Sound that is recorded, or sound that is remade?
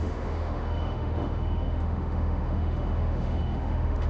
remade